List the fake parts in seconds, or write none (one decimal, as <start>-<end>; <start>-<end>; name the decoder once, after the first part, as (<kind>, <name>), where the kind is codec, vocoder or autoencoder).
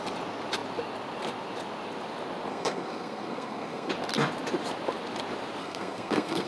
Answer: 2.5-3.9 (codec, SNAC); 5.6-6.5